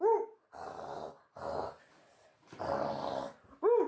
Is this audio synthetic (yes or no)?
no